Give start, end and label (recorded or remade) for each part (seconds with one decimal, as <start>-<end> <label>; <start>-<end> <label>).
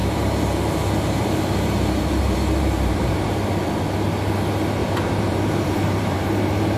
0.0-3.8 remade; 3.8-4.8 recorded; 4.8-6.8 remade